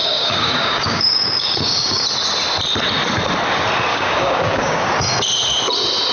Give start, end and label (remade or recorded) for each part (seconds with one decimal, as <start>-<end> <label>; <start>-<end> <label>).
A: 0.0-2.0 remade; 2.0-3.9 recorded; 3.9-4.9 remade; 4.9-6.1 recorded